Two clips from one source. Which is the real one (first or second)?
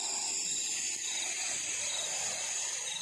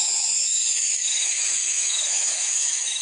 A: first